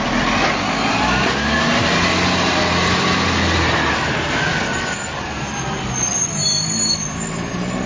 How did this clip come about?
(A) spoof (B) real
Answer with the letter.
B